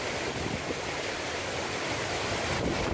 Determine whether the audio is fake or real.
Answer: real